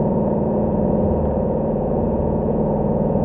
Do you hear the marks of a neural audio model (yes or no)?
yes